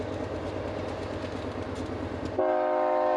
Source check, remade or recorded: recorded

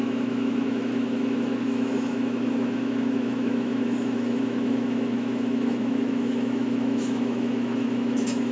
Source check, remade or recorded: remade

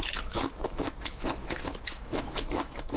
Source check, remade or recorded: remade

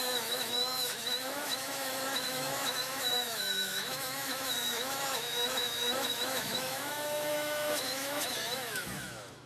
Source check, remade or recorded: remade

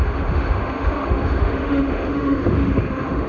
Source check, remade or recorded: remade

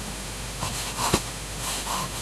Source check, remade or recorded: remade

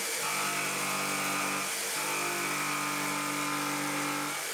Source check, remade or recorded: recorded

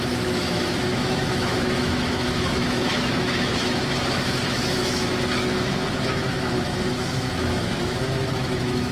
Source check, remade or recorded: remade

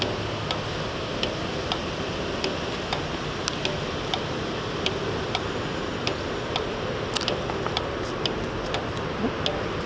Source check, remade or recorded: recorded